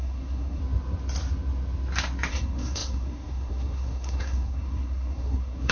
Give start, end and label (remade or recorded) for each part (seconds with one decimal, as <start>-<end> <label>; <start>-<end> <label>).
0.0-0.6 remade; 0.6-2.3 recorded; 2.3-5.7 remade